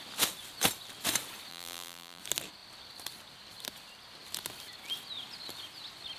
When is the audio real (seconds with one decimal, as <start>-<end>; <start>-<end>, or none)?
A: 0.0-1.5; 2.2-6.2